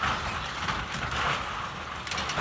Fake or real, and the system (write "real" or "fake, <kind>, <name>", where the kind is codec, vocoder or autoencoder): real